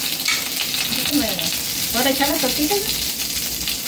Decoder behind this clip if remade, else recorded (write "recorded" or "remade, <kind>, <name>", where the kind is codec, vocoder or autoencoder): recorded